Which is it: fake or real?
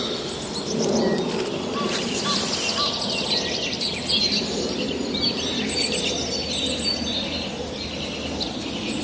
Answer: real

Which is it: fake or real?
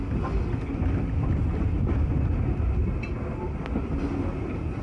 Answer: real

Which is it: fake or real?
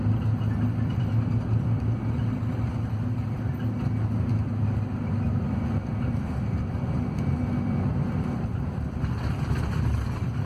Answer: fake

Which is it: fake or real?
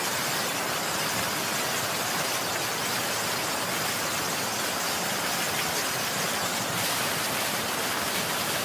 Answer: real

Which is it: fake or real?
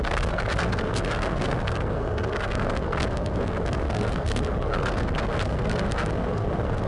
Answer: fake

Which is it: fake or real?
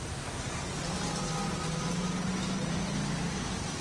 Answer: real